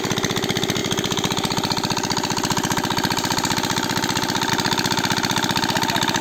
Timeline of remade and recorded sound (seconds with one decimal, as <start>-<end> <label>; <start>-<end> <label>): 0.0-0.8 recorded; 0.8-4.5 remade; 4.5-6.2 recorded